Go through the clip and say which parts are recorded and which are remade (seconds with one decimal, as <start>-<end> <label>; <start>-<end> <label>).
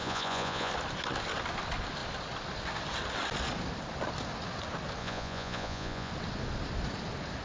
0.0-0.7 remade; 0.7-5.0 recorded; 5.0-6.1 remade; 6.1-7.4 recorded